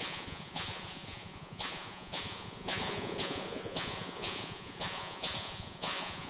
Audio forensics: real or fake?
fake